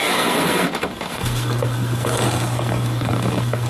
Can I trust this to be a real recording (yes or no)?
no